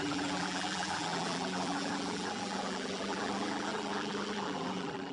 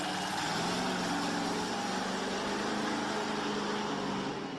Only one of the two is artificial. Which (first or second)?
first